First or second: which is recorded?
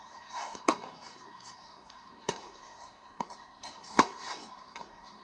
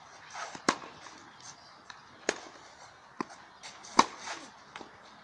second